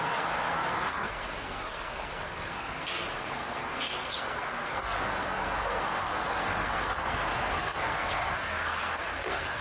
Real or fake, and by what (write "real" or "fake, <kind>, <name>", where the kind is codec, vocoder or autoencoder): fake, codec, SNAC